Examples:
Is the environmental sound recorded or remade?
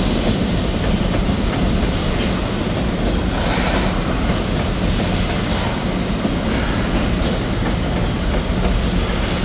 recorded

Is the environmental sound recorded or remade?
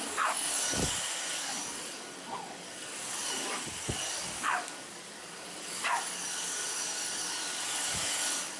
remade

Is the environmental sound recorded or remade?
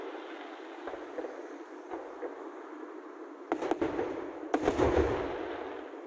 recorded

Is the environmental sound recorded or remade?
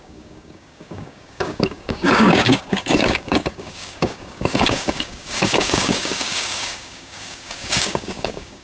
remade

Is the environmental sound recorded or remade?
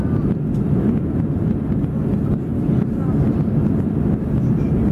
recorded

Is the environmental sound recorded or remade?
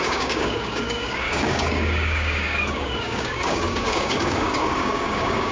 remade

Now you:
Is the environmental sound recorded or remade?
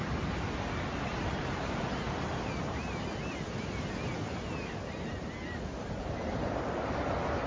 recorded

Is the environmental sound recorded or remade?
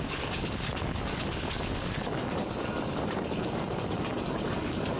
remade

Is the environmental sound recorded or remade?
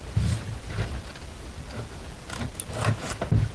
recorded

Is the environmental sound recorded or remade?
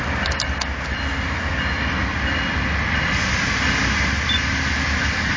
recorded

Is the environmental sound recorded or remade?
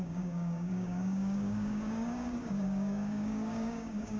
remade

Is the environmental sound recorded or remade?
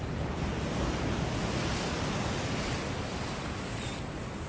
recorded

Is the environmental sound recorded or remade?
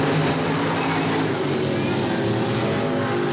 recorded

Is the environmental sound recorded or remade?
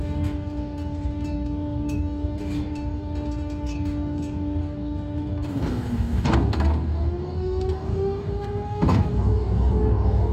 remade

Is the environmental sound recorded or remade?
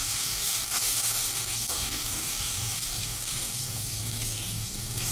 remade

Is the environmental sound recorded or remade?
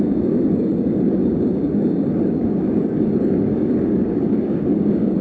remade